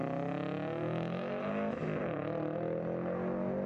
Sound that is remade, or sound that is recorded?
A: recorded